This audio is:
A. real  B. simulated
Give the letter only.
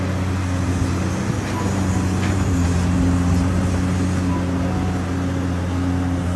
A